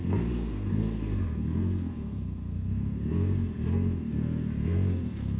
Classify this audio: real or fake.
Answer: fake